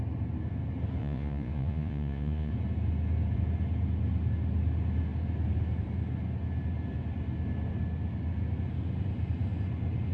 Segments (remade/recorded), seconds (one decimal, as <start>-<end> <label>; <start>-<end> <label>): 0.0-1.0 recorded; 1.0-2.5 remade; 2.5-10.1 recorded